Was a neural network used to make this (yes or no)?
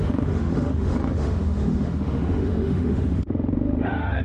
yes